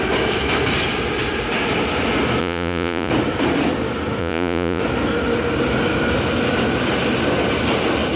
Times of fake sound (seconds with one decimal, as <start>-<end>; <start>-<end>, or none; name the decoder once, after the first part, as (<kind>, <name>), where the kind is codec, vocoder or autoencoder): 2.4-3.1 (vocoder, Vocos); 4.2-4.8